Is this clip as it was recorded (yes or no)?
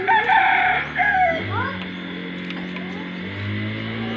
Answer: yes